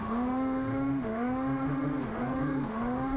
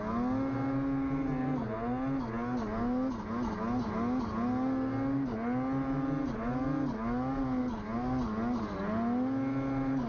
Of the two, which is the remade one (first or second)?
first